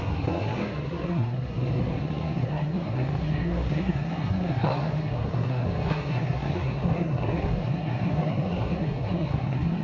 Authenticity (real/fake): fake